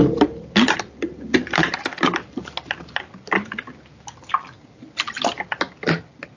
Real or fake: real